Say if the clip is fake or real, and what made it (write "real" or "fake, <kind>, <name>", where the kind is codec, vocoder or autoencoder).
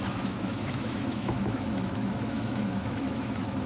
fake, autoencoder, DAC-VAE